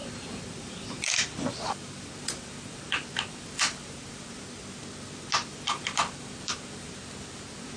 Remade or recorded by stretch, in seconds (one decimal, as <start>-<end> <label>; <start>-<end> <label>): 0.0-4.4 remade; 4.4-5.5 recorded; 5.5-6.9 remade; 6.9-7.8 recorded